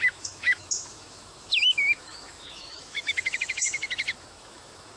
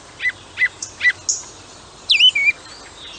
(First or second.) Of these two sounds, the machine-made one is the first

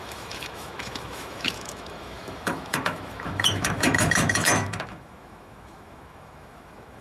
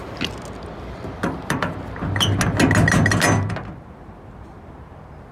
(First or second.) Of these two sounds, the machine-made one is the first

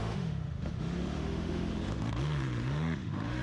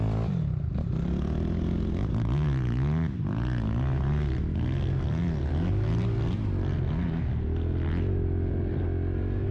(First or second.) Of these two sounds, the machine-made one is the first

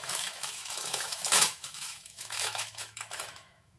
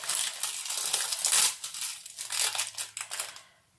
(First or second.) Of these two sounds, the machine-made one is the first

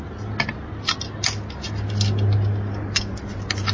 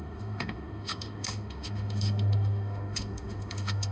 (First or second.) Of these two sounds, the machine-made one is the second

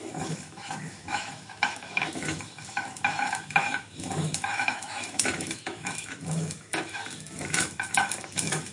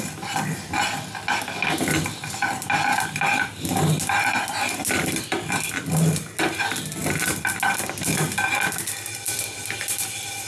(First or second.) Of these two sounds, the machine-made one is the first